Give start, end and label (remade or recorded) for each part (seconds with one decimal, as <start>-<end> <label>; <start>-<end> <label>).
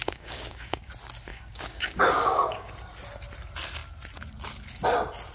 0.0-0.9 remade; 0.9-1.3 recorded; 1.3-2.7 remade; 2.7-5.3 recorded